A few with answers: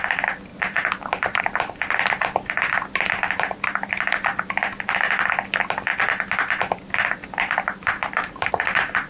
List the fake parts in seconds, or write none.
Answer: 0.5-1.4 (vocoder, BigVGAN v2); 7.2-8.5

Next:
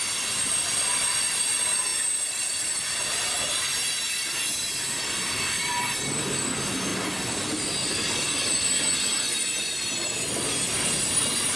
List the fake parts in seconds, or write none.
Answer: 0.0-6.9 (vocoder, BigVGAN v2); 7.9-11.6

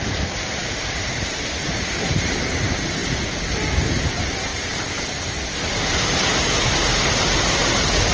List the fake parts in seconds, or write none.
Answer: 0.0-8.1 (vocoder, BigVGAN v2)

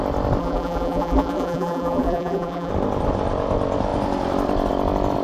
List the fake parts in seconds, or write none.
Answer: 0.4-2.7 (vocoder, BigVGAN v2)

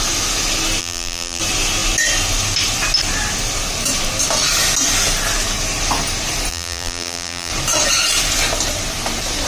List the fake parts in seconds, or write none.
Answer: 0.8-1.4 (vocoder, BigVGAN v2); 6.5-7.5

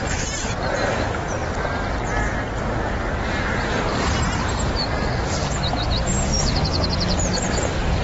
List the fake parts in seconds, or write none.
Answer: 0.0-1.4 (vocoder, BigVGAN v2); 2.9-8.0

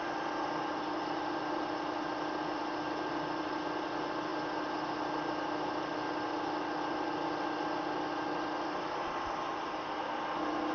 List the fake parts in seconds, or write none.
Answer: none